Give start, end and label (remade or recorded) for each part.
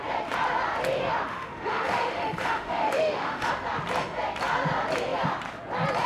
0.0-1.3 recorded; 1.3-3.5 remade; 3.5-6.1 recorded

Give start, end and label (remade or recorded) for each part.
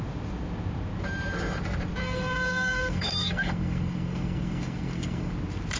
0.0-2.0 recorded; 2.0-5.3 remade; 5.3-5.8 recorded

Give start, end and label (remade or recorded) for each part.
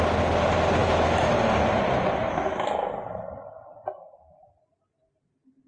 0.0-0.8 recorded; 0.8-1.4 remade; 1.4-2.2 recorded; 2.2-2.9 remade; 2.9-5.7 recorded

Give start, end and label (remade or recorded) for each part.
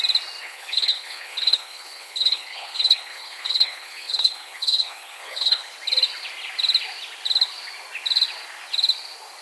0.0-0.4 recorded; 0.4-5.7 remade; 5.7-9.4 recorded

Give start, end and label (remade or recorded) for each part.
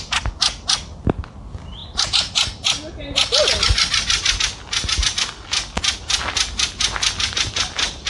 0.0-8.1 recorded